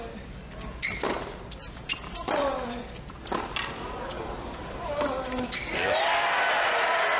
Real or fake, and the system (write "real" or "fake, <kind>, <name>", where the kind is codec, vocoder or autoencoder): real